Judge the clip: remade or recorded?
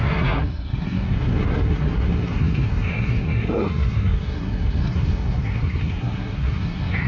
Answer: remade